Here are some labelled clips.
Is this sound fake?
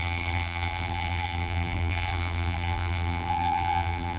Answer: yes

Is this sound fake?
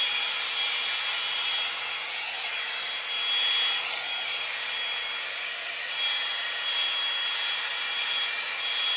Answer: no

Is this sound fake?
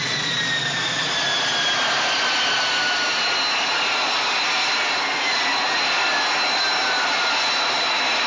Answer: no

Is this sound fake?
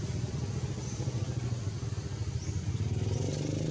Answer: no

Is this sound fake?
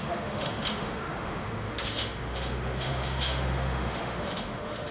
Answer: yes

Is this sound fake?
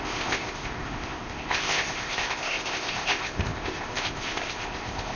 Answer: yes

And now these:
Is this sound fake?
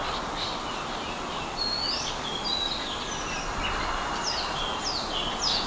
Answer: no